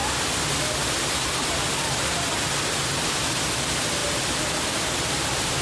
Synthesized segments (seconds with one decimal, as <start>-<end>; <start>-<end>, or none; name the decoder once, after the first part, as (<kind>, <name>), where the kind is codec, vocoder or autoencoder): none